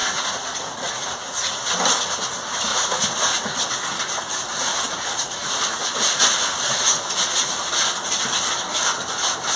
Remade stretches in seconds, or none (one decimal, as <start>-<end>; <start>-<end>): 0.0-1.6; 2.7-3.7; 4.7-7.7

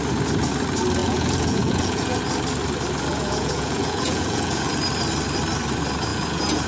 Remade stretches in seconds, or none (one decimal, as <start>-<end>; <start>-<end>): 1.0-2.2; 3.1-4.7; 6.1-6.7

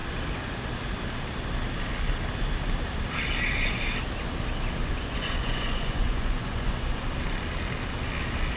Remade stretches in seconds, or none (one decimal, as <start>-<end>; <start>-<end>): 4.8-7.0

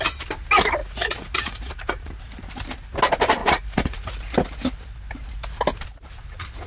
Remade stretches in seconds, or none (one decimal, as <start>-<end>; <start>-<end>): 0.8-2.1; 3.4-4.2

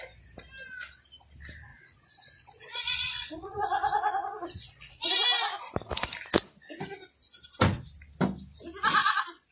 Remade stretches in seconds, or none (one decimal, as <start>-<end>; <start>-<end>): 1.7-5.1; 9.0-9.5